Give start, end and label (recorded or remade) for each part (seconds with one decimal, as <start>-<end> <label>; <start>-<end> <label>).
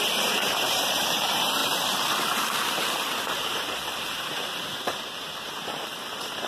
0.0-6.5 remade